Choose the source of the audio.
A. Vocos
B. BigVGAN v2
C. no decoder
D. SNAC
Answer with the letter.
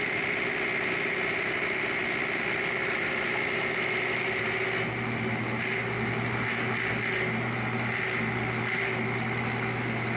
C